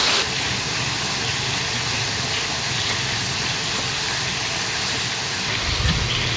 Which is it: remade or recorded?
recorded